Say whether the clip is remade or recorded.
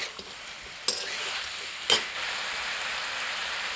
recorded